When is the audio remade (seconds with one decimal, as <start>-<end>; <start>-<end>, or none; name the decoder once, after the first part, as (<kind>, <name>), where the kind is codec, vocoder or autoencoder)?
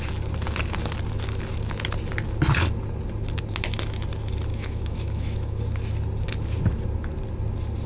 4.5-5.6 (autoencoder, DAC-VAE)